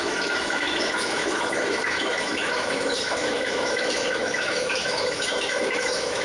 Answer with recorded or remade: remade